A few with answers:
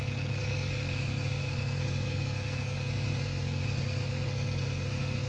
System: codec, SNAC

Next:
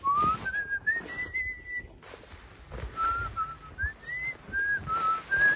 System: none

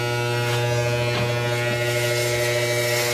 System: none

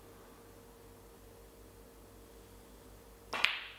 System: none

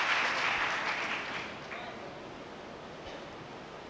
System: none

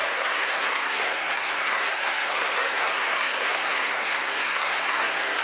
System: codec, SNAC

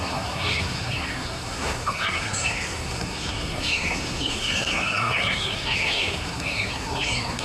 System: codec, SNAC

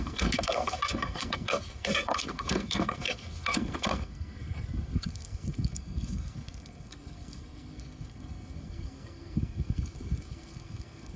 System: codec, SNAC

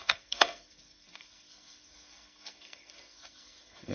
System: codec, SNAC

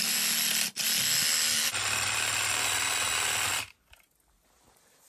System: none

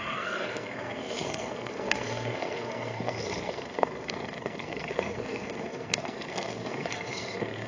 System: codec, SNAC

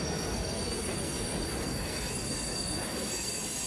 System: codec, SNAC